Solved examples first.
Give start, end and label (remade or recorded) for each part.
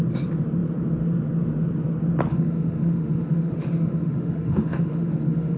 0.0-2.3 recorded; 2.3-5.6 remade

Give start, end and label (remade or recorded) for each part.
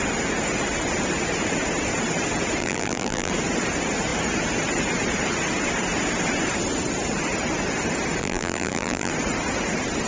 0.0-2.6 recorded; 2.6-3.3 remade; 3.3-8.2 recorded; 8.2-9.1 remade; 9.1-10.1 recorded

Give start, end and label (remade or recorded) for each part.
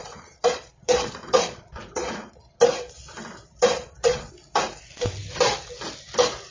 0.0-2.7 remade; 2.7-3.7 recorded; 3.7-4.3 remade; 4.3-6.5 recorded